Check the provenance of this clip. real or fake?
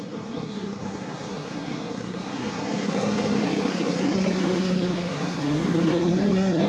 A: fake